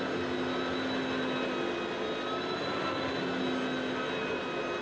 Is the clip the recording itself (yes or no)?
yes